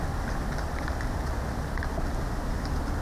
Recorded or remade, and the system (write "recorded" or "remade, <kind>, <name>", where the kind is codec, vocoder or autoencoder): recorded